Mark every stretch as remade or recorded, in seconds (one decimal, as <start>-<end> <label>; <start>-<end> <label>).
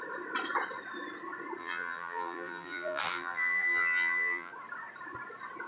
0.0-1.6 recorded; 1.6-4.5 remade; 4.5-5.7 recorded